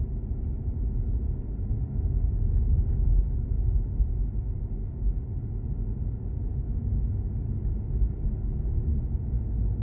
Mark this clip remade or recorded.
recorded